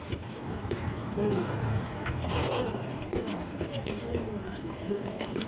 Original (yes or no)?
no